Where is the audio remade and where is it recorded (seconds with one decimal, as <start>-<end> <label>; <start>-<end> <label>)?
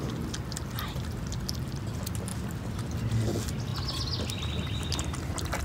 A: 0.0-5.6 recorded